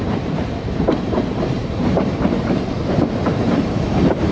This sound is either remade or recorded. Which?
remade